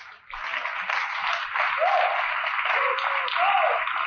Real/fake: real